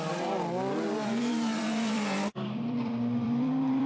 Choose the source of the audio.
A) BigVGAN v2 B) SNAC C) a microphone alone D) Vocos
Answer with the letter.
A